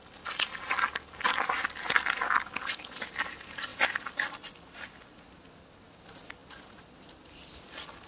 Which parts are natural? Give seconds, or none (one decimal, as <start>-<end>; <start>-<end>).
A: 0.0-8.1